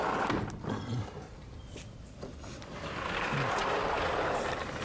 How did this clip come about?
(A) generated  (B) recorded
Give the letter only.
B